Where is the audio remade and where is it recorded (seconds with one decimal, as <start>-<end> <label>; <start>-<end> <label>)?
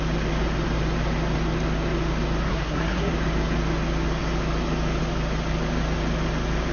0.0-2.5 recorded; 2.5-3.1 remade; 3.1-6.7 recorded